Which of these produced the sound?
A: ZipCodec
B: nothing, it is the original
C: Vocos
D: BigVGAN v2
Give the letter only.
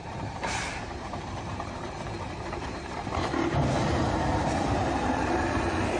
D